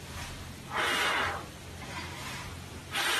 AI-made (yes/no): no